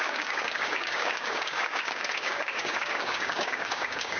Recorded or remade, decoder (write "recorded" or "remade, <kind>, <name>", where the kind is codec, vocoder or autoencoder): remade, codec, DAC